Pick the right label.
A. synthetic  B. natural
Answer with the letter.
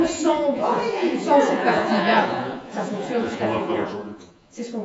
A